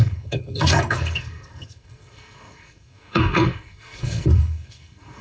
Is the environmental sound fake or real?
fake